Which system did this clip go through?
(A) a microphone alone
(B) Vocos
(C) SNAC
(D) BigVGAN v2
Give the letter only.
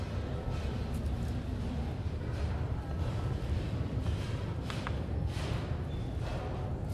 A